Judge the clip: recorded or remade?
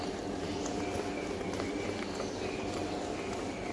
recorded